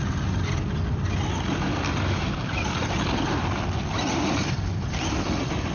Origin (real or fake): real